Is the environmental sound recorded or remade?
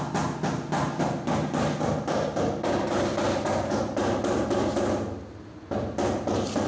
recorded